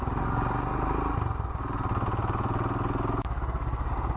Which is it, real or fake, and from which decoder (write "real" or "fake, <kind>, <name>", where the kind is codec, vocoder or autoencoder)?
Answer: real